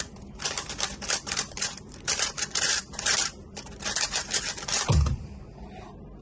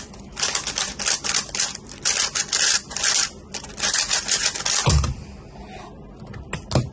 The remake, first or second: first